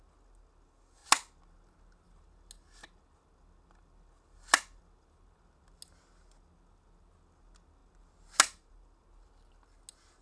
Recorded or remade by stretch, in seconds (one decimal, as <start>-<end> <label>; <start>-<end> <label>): 0.0-10.2 recorded